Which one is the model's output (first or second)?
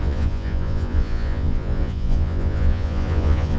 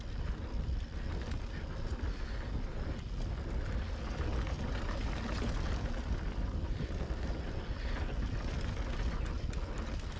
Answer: first